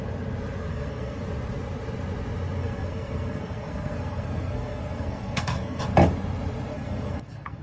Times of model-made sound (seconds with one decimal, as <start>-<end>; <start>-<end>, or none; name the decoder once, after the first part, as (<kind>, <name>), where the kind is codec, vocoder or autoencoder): 0.7-1.2 (codec, SNAC); 2.6-5.8; 6.7-7.6